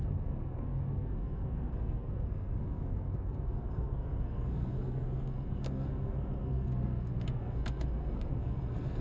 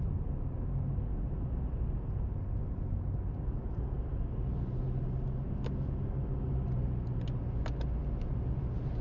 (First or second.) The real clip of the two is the second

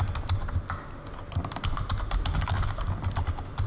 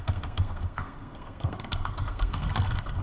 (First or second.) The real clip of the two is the first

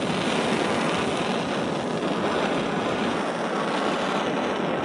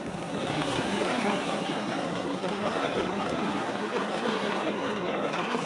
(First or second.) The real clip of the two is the first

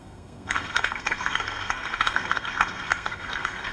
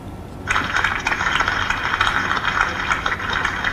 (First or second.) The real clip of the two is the second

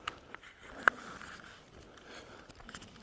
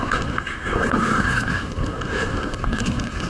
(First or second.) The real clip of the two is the first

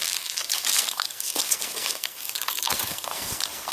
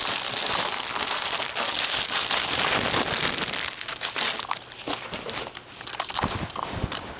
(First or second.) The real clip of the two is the second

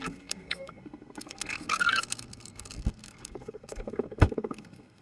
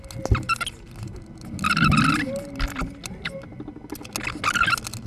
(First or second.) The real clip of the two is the second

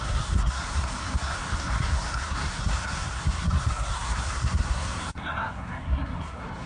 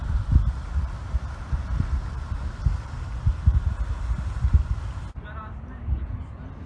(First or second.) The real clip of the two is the second